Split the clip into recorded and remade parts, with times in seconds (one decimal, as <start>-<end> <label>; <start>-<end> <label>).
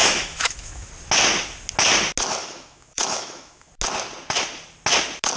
0.0-0.9 remade; 0.9-2.4 recorded; 2.4-3.7 remade; 3.7-5.4 recorded